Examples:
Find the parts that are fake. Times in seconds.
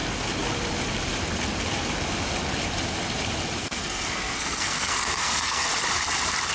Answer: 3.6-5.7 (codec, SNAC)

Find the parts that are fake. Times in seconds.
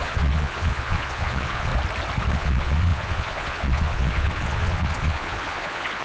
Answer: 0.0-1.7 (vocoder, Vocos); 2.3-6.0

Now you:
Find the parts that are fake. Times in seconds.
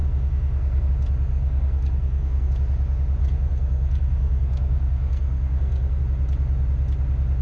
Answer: 0.0-0.9 (codec, SNAC); 1.3-2.5; 3.2-6.0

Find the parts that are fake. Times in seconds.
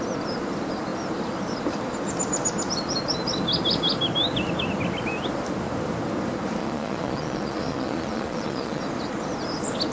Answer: 6.6-8.8 (vocoder, Vocos)